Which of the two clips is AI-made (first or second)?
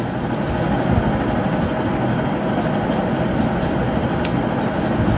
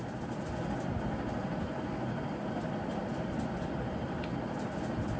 second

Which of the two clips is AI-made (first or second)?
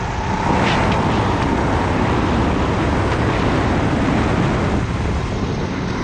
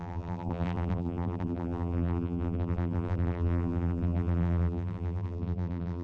second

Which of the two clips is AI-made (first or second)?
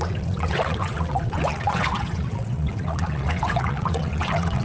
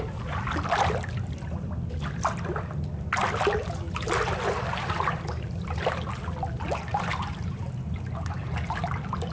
first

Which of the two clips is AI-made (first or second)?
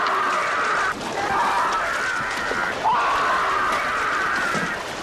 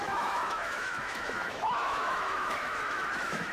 second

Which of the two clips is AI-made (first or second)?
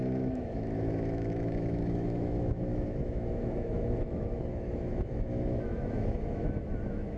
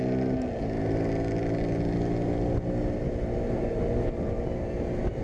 first